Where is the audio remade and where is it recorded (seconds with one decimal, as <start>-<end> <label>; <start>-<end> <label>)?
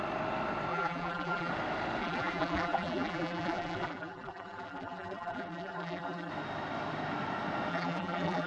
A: 0.0-0.7 recorded; 0.7-1.5 remade; 1.5-2.0 recorded; 2.0-6.3 remade; 6.3-7.7 recorded; 7.7-8.5 remade